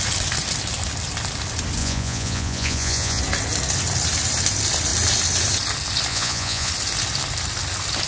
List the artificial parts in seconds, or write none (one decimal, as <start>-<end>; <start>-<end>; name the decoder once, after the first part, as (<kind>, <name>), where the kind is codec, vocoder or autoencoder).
1.8-3.2 (vocoder, Vocos); 6.1-6.7